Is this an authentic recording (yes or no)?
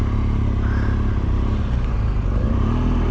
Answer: yes